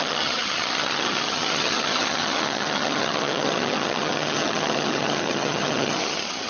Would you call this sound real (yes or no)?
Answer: no